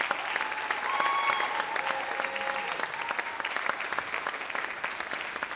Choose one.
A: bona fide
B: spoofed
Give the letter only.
A